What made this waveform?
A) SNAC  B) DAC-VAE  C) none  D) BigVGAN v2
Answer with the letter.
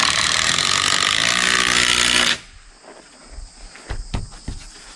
C